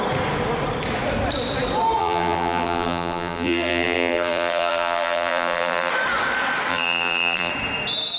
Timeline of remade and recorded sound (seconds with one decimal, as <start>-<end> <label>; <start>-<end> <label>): 0.0-2.0 recorded; 2.0-5.9 remade; 5.9-6.7 recorded; 6.7-7.5 remade; 7.5-8.2 recorded